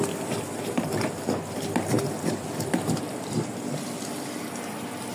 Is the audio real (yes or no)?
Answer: no